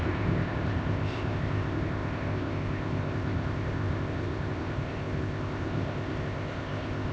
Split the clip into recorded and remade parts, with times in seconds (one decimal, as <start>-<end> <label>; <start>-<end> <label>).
0.0-7.1 remade